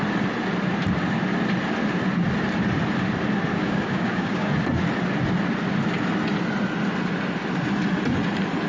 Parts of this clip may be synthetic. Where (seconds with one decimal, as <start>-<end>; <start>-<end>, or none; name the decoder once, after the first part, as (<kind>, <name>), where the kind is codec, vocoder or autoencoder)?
3.5-4.5 (codec, DAC)